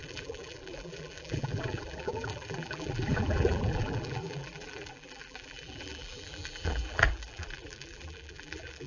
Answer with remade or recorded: remade